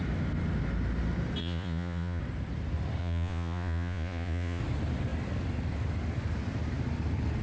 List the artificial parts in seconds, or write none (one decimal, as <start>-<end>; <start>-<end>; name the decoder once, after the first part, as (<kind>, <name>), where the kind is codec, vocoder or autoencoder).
1.4-2.2 (vocoder, Vocos); 3.0-4.6